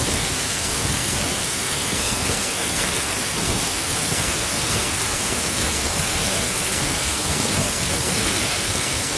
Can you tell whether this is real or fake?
fake